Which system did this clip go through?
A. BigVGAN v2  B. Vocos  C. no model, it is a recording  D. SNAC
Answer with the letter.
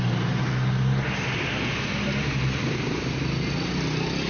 C